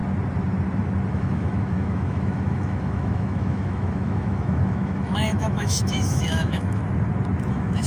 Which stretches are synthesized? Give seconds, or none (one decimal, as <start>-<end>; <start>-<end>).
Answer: 1.1-6.8; 7.5-7.9